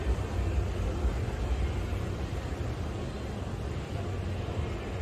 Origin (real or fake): real